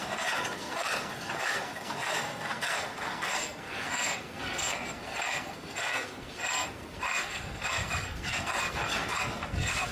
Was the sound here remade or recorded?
remade